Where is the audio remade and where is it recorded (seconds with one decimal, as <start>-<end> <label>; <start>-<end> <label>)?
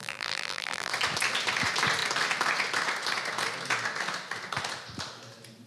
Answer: 0.0-0.9 remade; 0.9-5.7 recorded